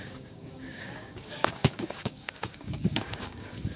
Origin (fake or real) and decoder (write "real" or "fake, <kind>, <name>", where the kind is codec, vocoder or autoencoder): fake, codec, DAC